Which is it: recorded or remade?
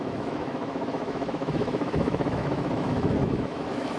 remade